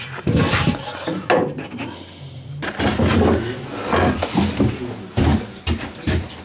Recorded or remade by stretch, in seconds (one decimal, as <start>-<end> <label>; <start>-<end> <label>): 0.0-6.4 recorded